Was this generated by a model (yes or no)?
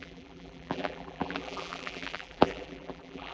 yes